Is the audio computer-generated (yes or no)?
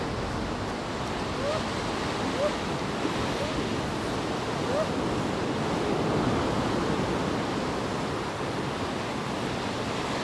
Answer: no